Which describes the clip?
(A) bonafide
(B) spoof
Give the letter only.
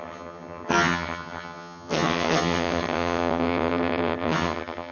B